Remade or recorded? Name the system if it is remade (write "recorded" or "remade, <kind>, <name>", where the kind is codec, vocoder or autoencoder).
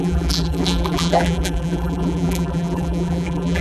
remade, vocoder, BigVGAN v2